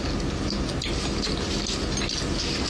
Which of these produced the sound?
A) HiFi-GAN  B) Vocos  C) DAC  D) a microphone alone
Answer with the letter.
D